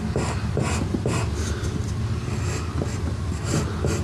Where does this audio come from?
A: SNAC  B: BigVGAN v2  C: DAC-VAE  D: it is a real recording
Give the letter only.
D